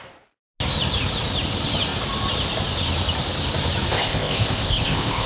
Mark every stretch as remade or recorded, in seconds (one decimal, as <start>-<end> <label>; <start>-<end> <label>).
0.0-3.9 recorded; 3.9-5.3 remade